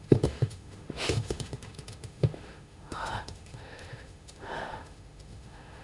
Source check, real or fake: fake